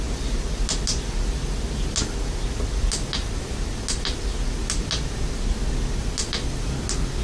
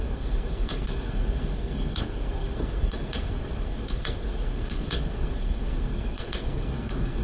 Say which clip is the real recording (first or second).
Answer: first